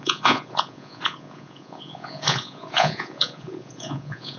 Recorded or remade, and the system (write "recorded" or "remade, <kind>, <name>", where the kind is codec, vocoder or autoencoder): remade, vocoder, Vocos